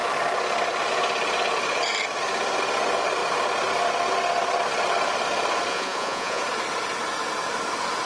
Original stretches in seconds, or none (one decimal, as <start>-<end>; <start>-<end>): 0.0-5.7; 6.4-8.1